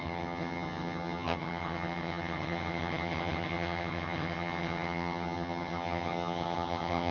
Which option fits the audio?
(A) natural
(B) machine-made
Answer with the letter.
B